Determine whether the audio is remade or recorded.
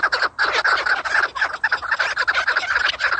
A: recorded